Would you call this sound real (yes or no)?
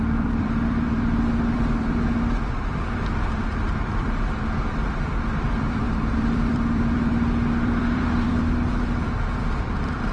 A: no